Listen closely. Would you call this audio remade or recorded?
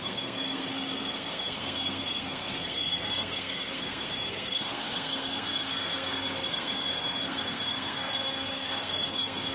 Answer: remade